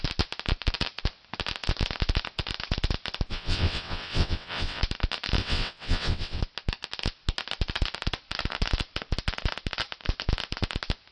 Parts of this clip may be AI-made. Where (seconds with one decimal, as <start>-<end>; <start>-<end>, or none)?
3.3-4.8; 5.4-6.4